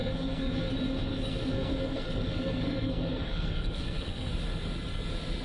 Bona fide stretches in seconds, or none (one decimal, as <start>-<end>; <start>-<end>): 0.7-1.1; 4.3-5.4